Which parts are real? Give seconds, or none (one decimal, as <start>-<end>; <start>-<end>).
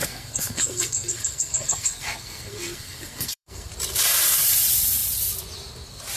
3.7-6.2